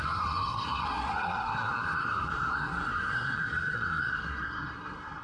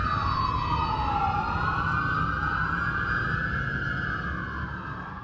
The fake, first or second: first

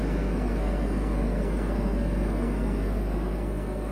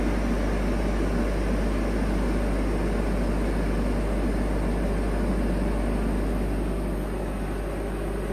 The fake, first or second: first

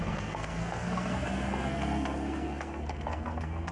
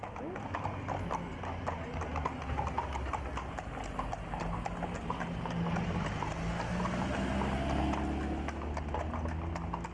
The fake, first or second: first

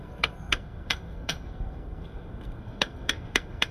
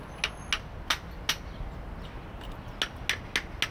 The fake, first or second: first